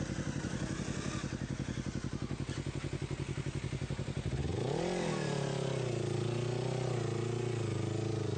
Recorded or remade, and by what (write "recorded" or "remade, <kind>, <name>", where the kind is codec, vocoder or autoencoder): recorded